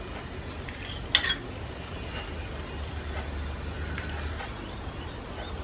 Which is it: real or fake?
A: real